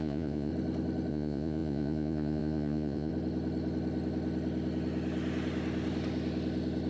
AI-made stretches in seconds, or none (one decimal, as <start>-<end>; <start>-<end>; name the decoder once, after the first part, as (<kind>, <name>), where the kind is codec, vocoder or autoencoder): 0.0-0.5 (vocoder, Vocos); 1.1-3.1